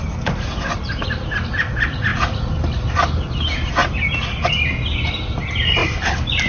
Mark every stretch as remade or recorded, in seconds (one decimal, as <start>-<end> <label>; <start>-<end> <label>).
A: 0.0-6.5 recorded